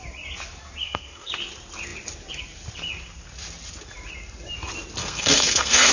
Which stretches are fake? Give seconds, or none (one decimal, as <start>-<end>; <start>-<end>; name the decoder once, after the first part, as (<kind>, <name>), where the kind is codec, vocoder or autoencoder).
0.8-1.3 (codec, SNAC); 5.0-5.9

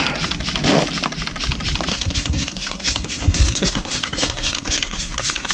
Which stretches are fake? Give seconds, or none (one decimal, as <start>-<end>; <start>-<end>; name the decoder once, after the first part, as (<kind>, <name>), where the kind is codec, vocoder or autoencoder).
1.9-5.5 (codec, SNAC)

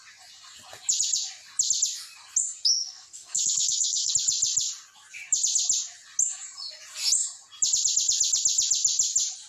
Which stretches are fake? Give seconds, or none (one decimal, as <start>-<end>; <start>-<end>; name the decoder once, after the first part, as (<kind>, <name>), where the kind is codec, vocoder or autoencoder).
2.8-4.1 (codec, SNAC)

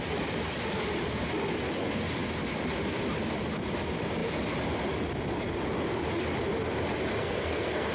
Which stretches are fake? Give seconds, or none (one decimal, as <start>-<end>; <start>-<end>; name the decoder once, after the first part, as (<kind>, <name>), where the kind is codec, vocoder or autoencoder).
7.2-7.9 (codec, SNAC)

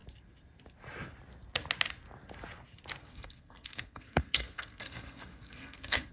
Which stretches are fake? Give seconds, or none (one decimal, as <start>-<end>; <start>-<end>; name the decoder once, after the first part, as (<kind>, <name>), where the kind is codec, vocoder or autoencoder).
3.0-6.1 (codec, SNAC)

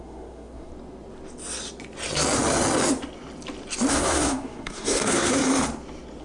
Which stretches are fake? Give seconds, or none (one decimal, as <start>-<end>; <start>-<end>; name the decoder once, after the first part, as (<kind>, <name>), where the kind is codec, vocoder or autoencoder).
0.0-0.7 (codec, SNAC); 3.9-5.4

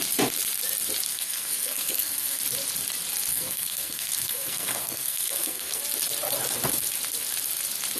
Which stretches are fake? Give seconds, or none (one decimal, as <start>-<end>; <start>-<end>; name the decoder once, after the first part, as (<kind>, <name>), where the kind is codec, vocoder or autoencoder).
1.1-2.4 (codec, SNAC); 3.3-5.8